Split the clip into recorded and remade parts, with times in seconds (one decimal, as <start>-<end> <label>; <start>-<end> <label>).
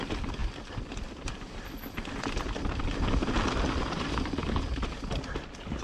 0.0-5.8 recorded